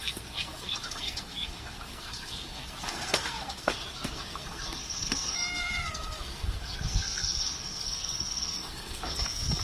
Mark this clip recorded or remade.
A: remade